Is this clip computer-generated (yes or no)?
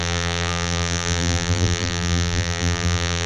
yes